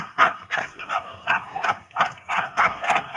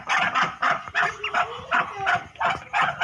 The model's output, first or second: first